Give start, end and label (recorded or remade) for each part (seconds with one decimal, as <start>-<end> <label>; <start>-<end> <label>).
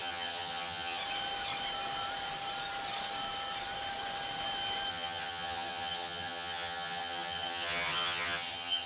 0.0-1.0 remade; 1.0-4.9 recorded; 4.9-8.9 remade